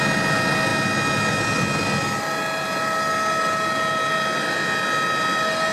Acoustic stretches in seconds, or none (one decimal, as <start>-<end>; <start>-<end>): 0.0-5.7